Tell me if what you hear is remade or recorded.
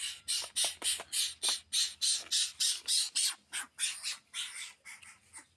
recorded